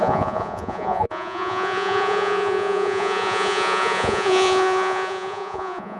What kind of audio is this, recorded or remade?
remade